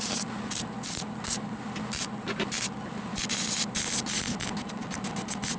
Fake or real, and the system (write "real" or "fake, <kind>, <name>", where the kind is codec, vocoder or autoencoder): real